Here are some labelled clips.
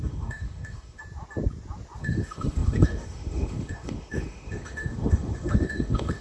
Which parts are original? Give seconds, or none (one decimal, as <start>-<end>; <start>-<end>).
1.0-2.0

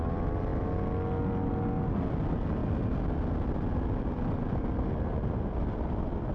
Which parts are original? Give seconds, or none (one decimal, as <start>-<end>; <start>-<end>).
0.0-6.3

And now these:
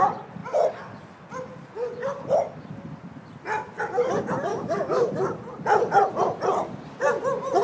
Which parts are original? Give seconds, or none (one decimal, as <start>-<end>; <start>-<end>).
0.0-4.5; 5.1-7.6

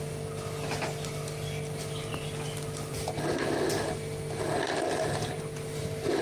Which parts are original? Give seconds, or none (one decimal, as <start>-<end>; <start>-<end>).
0.0-6.2

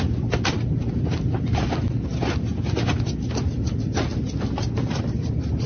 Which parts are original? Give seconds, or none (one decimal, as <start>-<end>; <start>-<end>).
0.0-5.7

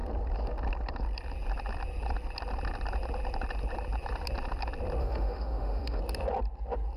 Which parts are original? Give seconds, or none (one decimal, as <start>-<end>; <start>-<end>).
0.0-5.0; 6.0-7.0

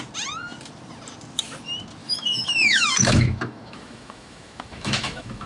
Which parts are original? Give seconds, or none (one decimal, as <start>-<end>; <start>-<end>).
0.0-2.0

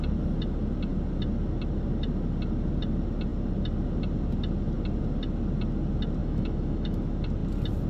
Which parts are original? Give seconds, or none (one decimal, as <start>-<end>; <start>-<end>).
0.0-6.2; 7.0-7.9